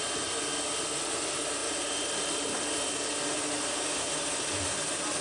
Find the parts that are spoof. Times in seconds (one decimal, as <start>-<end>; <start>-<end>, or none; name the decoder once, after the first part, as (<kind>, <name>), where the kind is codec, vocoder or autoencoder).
none